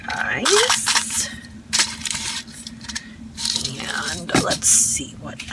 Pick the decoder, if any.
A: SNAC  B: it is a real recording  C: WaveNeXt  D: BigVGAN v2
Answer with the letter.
D